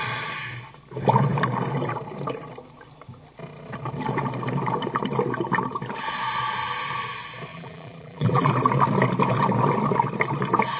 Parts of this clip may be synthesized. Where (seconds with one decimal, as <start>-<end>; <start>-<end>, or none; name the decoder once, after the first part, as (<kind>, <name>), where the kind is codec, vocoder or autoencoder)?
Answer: 7.5-8.5 (vocoder, BigVGAN v2)